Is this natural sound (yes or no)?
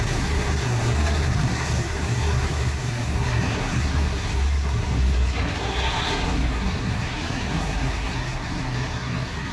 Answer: no